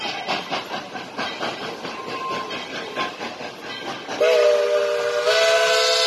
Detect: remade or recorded recorded